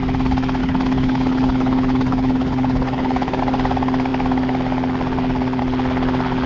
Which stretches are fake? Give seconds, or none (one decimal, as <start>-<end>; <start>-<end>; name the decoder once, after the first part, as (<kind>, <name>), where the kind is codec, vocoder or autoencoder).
0.6-3.4 (codec, HILCodec)